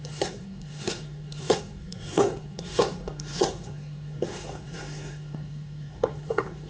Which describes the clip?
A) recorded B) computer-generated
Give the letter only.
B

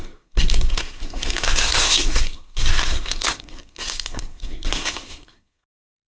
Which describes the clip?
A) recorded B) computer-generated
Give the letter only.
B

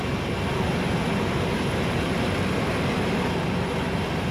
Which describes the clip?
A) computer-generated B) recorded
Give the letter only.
B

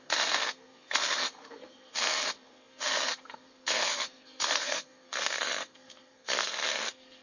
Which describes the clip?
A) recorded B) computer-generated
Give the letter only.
B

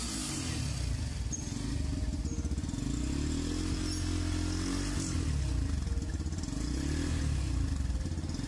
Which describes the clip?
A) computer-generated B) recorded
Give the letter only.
B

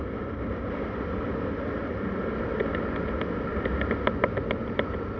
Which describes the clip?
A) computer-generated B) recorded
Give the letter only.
B